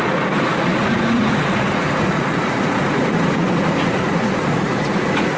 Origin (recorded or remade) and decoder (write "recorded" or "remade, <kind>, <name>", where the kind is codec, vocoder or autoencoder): remade, vocoder, Vocos